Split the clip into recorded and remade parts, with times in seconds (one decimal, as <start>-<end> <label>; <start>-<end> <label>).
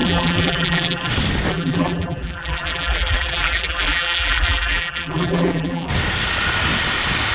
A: 0.0-1.1 remade; 1.1-1.5 recorded; 1.5-5.9 remade; 5.9-7.3 recorded